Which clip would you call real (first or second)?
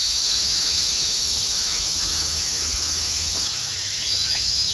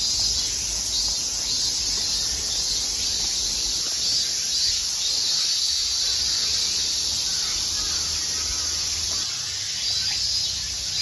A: second